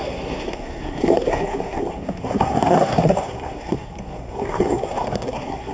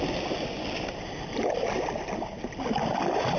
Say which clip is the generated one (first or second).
first